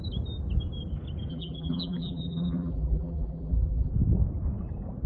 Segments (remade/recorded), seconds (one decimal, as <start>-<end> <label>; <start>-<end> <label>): 0.0-1.3 recorded; 1.3-3.9 remade; 3.9-5.1 recorded